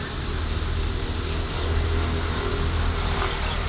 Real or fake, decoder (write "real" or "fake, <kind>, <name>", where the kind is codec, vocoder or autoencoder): real